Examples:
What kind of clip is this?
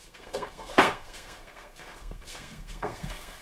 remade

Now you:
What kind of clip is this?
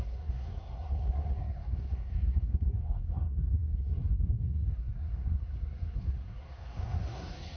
remade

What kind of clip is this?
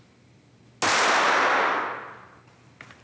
recorded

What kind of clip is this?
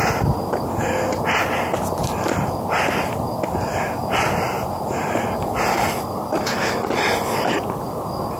recorded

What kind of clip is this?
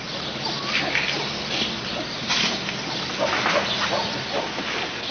recorded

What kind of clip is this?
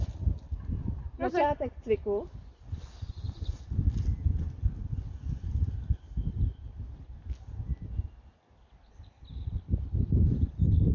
recorded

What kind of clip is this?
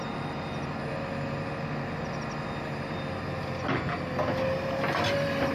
recorded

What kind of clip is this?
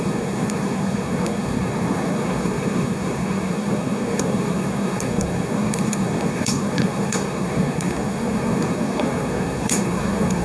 remade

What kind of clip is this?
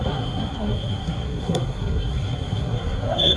remade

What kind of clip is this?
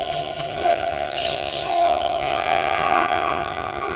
remade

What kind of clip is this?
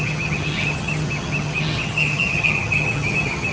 remade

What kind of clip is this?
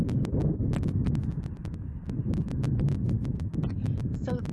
recorded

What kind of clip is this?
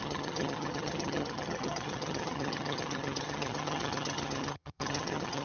remade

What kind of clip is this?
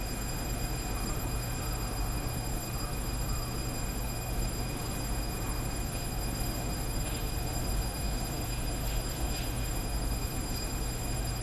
remade